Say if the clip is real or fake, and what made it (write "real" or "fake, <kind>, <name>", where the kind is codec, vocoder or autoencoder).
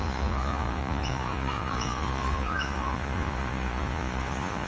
fake, vocoder, Vocos